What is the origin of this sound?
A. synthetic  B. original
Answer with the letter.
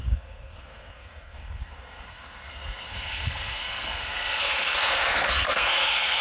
A